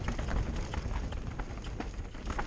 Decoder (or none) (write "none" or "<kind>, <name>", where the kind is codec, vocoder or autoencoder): none